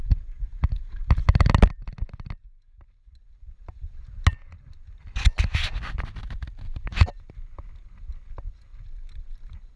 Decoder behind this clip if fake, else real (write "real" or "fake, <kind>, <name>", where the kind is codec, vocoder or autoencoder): real